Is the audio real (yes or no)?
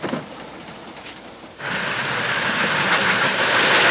yes